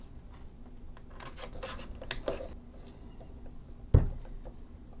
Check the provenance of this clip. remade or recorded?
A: recorded